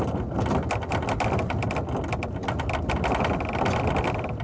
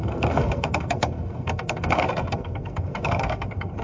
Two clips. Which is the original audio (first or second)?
first